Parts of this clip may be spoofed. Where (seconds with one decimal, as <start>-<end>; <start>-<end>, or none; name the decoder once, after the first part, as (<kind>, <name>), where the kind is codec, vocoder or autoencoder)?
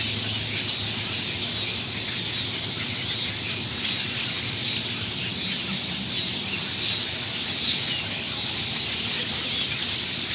none